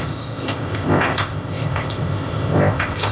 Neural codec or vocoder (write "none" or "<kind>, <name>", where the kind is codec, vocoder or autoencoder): codec, ZipCodec